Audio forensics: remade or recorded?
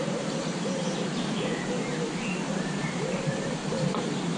remade